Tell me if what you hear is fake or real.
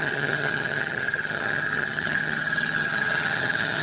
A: fake